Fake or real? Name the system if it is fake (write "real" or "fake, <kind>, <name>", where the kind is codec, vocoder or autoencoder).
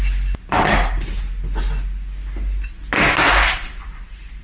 real